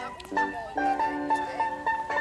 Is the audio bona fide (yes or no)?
yes